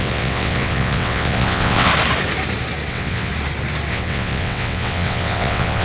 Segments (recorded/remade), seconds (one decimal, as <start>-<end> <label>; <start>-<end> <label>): 0.0-1.9 remade; 1.9-2.9 recorded; 2.9-3.3 remade; 3.3-3.9 recorded; 3.9-5.8 remade